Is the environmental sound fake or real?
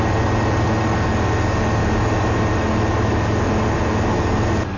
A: real